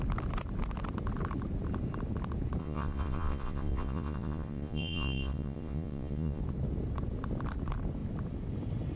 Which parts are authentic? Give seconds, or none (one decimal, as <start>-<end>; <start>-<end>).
0.0-2.6; 6.4-9.0